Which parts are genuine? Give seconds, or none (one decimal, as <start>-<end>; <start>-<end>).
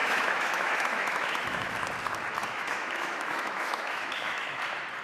1.7-2.4; 4.6-5.0